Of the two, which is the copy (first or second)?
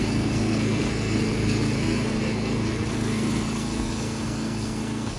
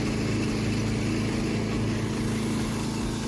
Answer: first